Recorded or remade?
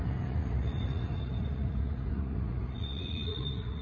remade